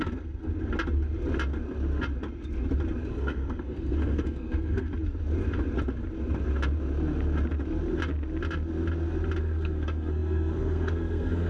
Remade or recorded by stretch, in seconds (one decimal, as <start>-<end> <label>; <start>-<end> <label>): 0.0-0.5 remade; 0.5-3.1 recorded; 3.1-4.9 remade; 4.9-9.4 recorded; 9.4-11.5 remade